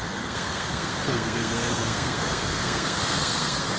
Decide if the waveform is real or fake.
fake